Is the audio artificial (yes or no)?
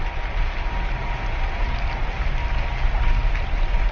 no